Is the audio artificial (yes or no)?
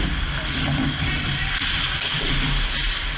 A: yes